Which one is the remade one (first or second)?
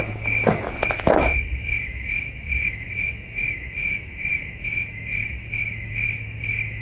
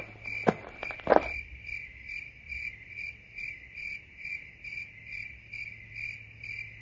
first